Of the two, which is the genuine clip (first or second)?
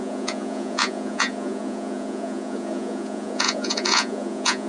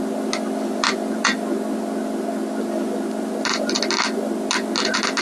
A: second